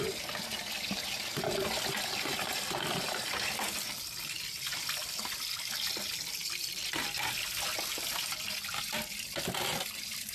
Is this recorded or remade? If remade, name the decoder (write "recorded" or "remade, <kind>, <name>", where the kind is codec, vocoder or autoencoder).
recorded